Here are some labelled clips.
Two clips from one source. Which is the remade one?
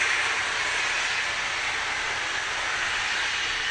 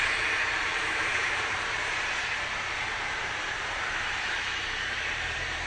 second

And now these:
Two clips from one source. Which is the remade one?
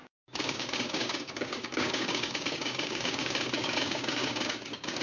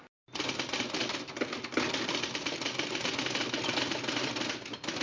first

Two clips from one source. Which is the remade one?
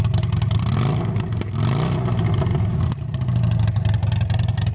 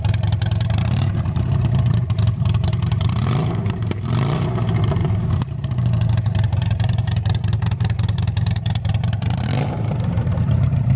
second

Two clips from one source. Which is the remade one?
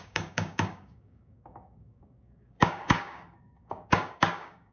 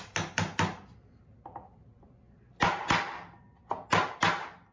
first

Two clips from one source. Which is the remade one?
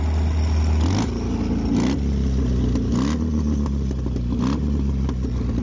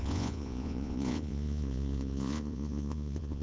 second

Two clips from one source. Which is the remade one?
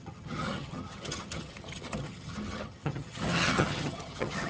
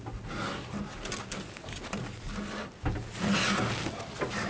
first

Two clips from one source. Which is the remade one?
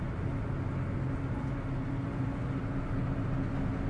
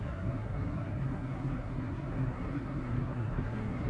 second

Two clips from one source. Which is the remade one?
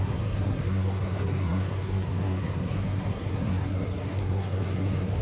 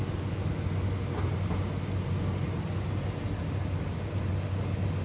first